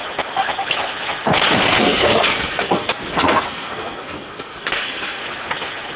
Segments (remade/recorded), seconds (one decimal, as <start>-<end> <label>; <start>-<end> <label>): 0.0-1.8 recorded; 1.8-5.2 remade; 5.2-6.0 recorded